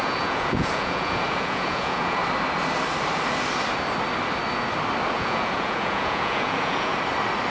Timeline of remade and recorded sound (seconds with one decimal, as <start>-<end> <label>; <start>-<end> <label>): 0.0-2.2 remade; 2.2-5.1 recorded; 5.1-6.9 remade; 6.9-7.5 recorded